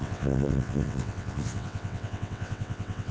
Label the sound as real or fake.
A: fake